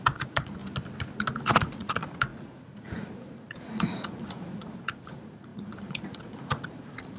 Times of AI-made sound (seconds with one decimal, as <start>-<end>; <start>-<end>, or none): 0.0-0.6; 1.5-7.2